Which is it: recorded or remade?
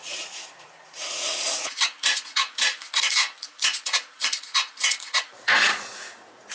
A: remade